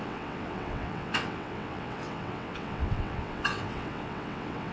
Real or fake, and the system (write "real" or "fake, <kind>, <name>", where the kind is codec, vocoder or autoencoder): fake, vocoder, WaveNeXt